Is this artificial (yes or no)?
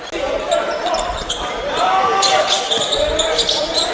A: no